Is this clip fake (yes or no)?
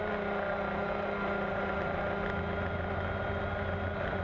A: no